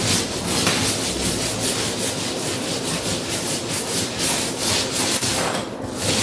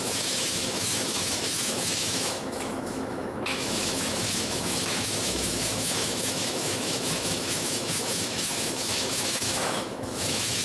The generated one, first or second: second